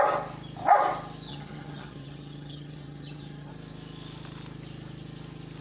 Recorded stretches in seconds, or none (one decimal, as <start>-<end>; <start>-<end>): 0.0-1.3; 3.5-5.6